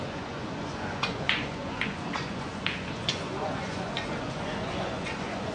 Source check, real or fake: fake